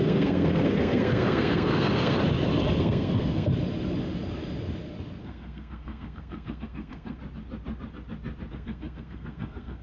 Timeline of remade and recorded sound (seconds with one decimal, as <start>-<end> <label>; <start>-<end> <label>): 0.0-2.2 remade; 2.2-2.8 recorded; 2.8-3.5 remade; 3.5-5.2 recorded; 5.2-7.2 remade; 7.2-8.5 recorded; 8.5-9.8 remade